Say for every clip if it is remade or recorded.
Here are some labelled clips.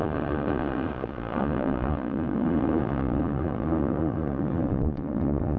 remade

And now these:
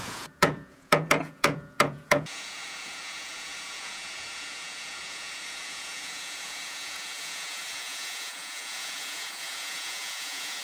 remade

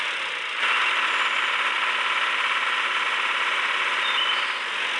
recorded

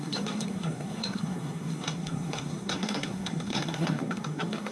remade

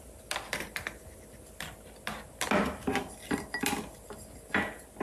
recorded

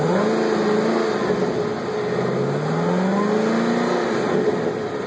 recorded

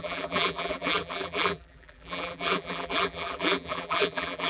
remade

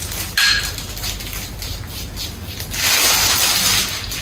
recorded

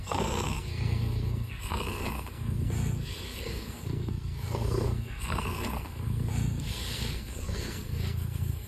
remade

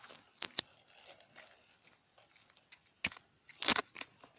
recorded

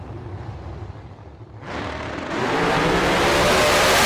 recorded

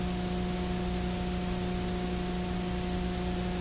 recorded